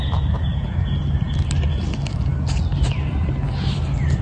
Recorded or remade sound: recorded